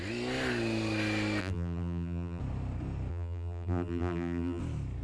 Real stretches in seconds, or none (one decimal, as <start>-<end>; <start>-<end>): 0.0-1.4; 2.4-3.1; 4.6-5.0